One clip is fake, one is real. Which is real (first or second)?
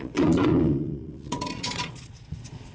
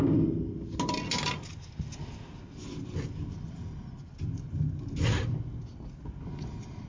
second